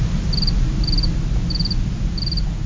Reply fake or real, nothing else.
real